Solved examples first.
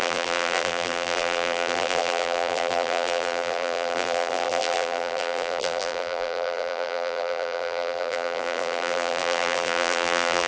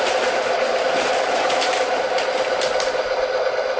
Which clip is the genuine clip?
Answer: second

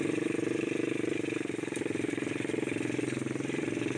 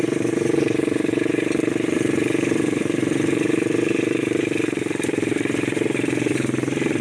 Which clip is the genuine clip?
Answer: first